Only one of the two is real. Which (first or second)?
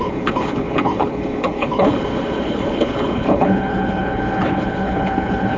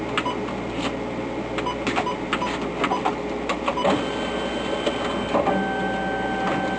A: second